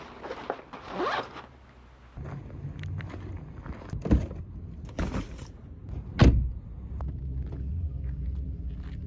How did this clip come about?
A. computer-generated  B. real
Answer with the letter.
B